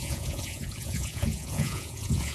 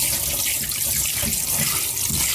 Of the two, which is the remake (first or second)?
first